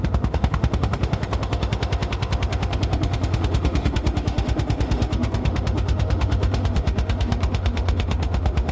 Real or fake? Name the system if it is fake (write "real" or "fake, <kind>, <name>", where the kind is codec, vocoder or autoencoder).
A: fake, autoencoder, DAC-VAE